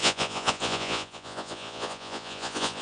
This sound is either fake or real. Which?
fake